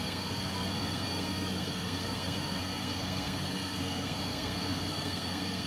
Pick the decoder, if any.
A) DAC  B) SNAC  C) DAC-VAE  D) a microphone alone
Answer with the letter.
B